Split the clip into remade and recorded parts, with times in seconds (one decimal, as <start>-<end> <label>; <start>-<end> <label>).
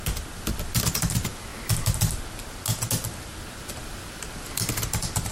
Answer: 0.0-5.3 recorded